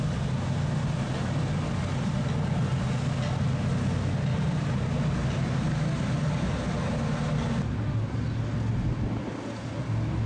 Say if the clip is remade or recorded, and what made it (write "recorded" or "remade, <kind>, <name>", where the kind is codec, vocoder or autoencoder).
recorded